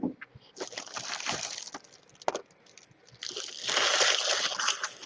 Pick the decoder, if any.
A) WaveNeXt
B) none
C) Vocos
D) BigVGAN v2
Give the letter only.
B